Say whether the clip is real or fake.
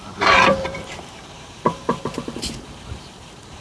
fake